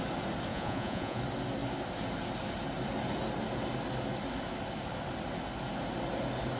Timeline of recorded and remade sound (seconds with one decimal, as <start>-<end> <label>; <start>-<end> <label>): 0.0-0.5 recorded; 0.5-1.2 remade; 1.2-6.6 recorded